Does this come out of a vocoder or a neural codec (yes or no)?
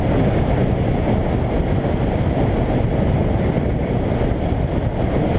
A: no